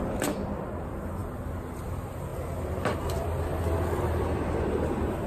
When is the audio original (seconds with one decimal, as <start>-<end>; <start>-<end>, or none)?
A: 2.3-2.8